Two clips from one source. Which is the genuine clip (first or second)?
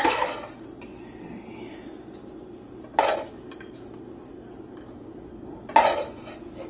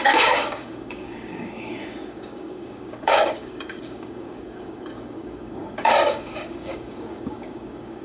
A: first